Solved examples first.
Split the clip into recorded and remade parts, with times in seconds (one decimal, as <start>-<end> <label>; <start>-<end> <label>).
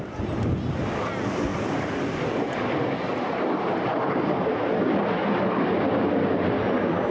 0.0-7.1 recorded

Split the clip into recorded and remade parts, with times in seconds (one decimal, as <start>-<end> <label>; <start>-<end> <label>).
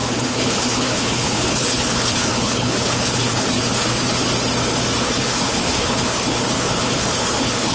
0.0-4.2 remade; 4.2-5.0 recorded; 5.0-7.7 remade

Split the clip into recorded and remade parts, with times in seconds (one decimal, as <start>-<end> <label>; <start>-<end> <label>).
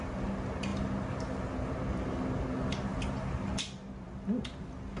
0.0-5.0 recorded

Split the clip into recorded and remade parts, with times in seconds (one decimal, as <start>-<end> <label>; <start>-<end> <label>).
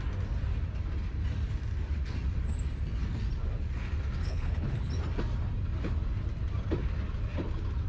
0.0-4.2 recorded; 4.2-4.9 remade; 4.9-7.9 recorded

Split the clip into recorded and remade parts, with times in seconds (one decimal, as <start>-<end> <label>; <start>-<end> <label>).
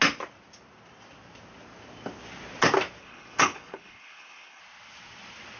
0.0-3.0 recorded; 3.0-4.6 remade; 4.6-5.6 recorded